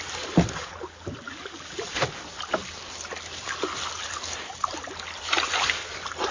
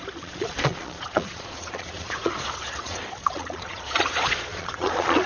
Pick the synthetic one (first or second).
second